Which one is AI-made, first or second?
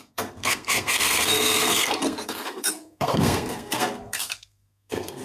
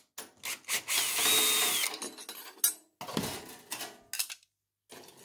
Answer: first